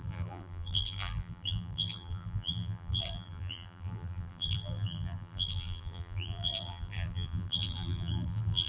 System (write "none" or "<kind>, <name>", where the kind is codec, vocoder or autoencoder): vocoder, BigVGAN v2